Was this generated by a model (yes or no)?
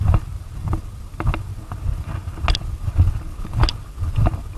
no